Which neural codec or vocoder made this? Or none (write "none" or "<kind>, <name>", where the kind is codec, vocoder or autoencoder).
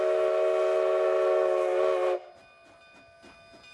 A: none